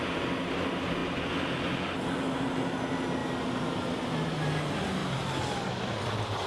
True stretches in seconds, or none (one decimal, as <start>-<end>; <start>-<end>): 0.0-5.0; 5.7-6.5